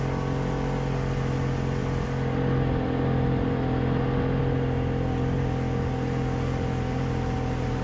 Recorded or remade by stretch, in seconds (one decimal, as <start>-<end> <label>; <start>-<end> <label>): 0.0-7.8 recorded